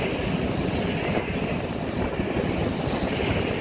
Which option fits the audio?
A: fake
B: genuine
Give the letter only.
B